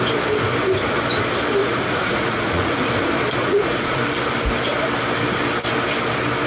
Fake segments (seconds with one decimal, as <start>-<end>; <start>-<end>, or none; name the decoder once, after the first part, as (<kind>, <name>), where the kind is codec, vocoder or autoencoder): 1.6-2.8 (vocoder, Vocos); 3.4-4.0